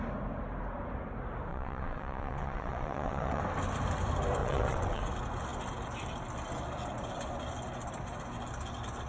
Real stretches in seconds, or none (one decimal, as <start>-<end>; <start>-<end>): 0.0-1.5; 3.4-4.4; 5.0-9.1